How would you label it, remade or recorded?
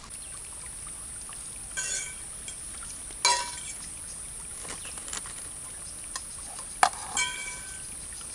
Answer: recorded